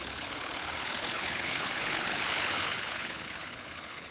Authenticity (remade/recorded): remade